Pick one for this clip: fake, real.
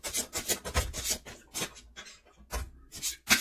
real